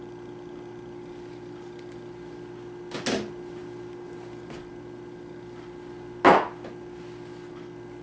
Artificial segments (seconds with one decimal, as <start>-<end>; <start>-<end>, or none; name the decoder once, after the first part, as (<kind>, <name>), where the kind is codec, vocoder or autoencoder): none